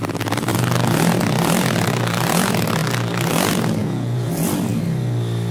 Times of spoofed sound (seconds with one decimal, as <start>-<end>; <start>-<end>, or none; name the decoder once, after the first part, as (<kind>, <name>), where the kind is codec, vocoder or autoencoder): 3.8-4.3 (vocoder, Vocos)